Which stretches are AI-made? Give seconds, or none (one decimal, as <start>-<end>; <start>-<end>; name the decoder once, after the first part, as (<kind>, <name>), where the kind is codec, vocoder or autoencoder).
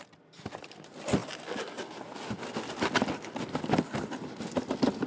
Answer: none